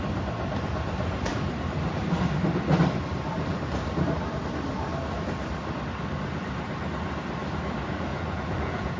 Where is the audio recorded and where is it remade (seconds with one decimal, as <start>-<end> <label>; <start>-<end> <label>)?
0.0-8.1 recorded; 8.1-9.0 remade